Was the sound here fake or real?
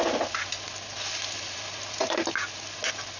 real